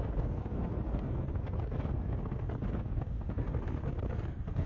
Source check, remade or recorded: remade